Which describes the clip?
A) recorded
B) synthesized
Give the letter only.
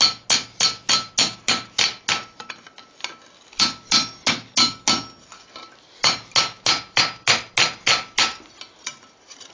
A